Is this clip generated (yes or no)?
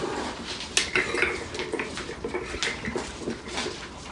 no